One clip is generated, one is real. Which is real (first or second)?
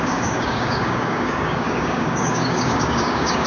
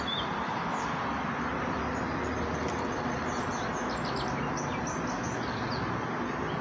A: second